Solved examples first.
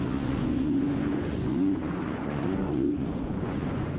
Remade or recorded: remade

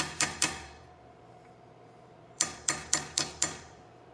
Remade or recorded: remade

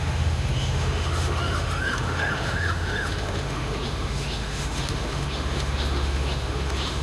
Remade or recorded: remade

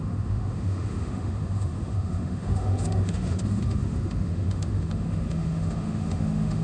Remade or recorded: remade